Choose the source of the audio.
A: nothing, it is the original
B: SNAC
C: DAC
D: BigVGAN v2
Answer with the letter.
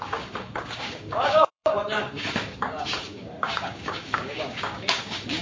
C